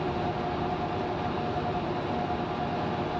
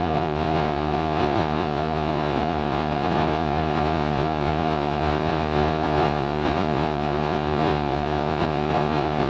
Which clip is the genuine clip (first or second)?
first